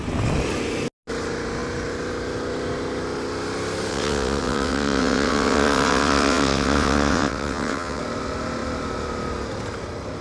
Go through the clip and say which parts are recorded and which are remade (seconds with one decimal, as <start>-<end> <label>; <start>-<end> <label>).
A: 0.0-3.9 recorded; 3.9-8.0 remade; 8.0-10.2 recorded